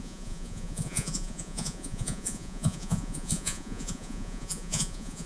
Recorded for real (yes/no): no